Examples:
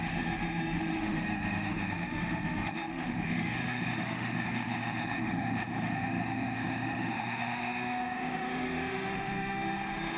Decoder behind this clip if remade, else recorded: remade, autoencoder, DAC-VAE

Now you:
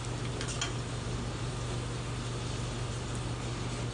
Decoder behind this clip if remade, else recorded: recorded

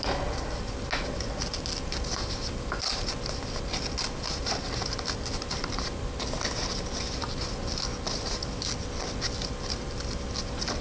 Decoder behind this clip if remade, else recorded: recorded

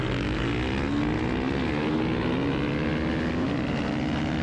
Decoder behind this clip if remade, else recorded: recorded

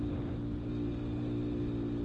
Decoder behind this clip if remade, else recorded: recorded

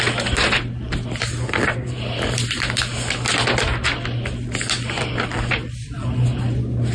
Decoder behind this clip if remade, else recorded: recorded